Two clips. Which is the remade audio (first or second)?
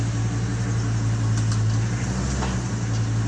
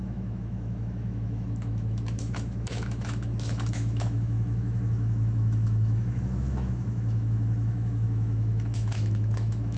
second